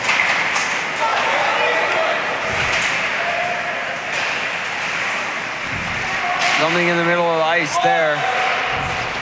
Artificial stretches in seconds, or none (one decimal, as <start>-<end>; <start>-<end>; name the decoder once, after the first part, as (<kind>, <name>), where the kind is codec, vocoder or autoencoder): 3.1-4.6 (vocoder, BigVGAN v2)